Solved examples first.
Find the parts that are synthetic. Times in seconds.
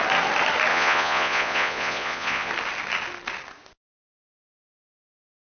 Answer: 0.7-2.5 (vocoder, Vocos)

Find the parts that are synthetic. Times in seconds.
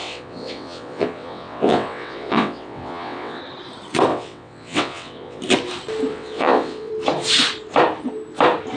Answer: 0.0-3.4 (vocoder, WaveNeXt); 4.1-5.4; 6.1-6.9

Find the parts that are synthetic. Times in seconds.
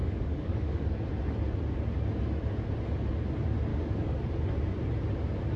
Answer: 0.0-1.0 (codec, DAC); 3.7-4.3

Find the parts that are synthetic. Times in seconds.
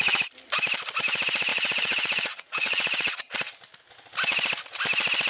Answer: 1.5-3.4 (vocoder, WaveNeXt)